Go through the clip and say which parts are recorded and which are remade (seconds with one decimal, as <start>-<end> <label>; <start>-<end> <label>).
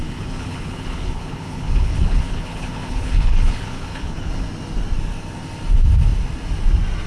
0.0-4.3 remade; 4.3-7.1 recorded